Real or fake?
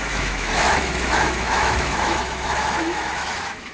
fake